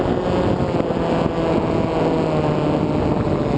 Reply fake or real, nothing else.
real